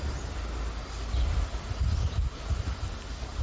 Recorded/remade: recorded